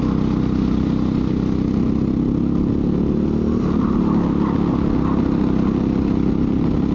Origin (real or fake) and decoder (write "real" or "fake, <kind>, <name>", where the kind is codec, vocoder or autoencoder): real